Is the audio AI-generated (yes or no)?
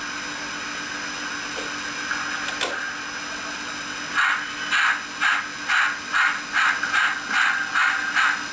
no